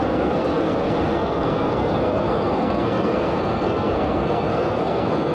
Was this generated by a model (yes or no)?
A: yes